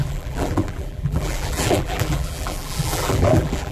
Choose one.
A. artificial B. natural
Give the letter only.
A